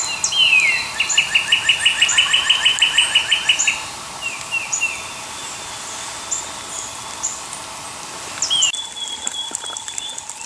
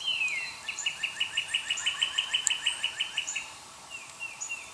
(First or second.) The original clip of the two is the first